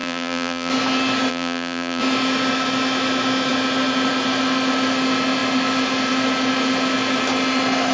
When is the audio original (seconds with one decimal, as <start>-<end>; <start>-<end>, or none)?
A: 0.7-1.3; 2.0-7.9